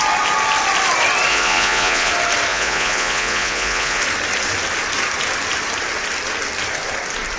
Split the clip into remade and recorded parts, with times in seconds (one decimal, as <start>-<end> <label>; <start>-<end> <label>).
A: 0.0-1.3 recorded; 1.3-2.1 remade; 2.1-2.5 recorded; 2.5-4.0 remade; 4.0-7.4 recorded